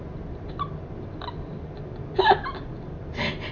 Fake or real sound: real